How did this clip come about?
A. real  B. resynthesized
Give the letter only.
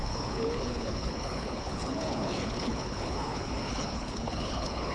B